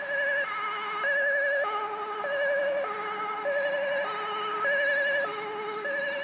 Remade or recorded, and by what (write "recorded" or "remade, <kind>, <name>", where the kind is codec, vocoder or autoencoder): recorded